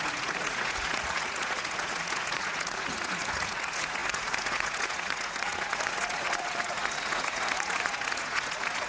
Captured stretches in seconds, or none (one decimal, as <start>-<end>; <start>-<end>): none